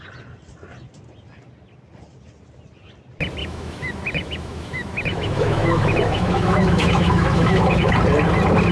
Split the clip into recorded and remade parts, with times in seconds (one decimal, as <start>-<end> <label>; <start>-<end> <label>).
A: 0.0-3.4 recorded; 3.4-7.9 remade; 7.9-8.7 recorded